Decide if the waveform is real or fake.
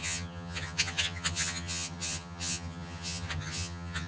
fake